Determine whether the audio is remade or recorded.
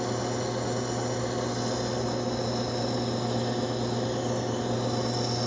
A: recorded